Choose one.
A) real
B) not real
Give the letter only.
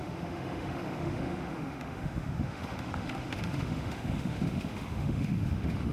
B